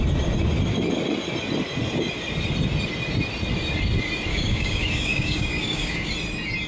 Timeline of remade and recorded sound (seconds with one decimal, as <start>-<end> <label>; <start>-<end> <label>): 0.0-4.3 recorded; 4.3-6.1 remade; 6.1-6.7 recorded